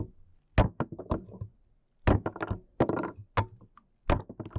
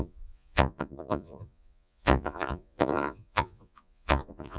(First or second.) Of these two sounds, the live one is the first